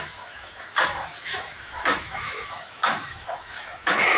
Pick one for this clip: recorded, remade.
remade